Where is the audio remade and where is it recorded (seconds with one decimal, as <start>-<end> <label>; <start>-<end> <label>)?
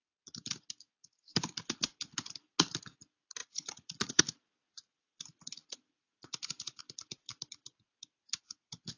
0.0-3.4 recorded; 3.4-4.2 remade; 4.2-9.0 recorded